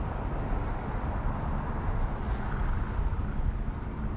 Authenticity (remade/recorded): recorded